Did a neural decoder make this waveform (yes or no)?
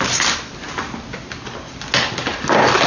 no